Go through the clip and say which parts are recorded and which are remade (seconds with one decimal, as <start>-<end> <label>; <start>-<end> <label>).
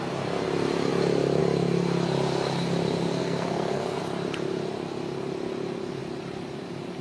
0.0-3.2 recorded; 3.2-4.0 remade; 4.0-7.0 recorded